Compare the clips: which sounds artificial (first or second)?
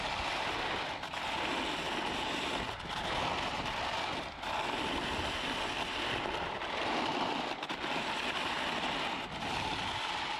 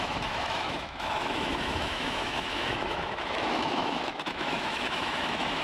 second